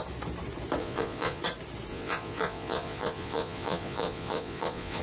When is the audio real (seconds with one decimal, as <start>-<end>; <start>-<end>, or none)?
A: 0.0-0.8; 1.4-1.9